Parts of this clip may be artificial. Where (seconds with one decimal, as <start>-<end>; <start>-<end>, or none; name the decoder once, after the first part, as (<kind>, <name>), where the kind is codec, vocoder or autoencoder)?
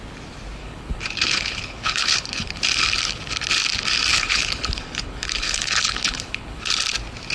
0.6-2.6 (codec, HILCodec); 4.1-6.8